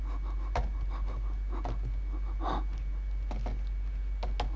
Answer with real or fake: real